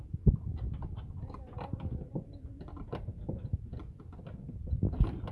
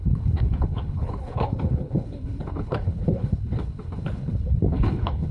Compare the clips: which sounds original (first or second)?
first